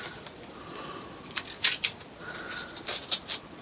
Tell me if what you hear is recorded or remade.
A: recorded